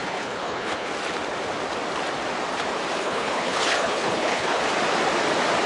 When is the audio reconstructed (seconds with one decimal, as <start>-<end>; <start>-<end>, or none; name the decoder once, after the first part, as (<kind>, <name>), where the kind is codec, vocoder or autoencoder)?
0.0-0.9 (codec, HILCodec); 3.0-4.6